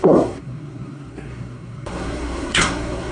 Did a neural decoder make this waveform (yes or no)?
yes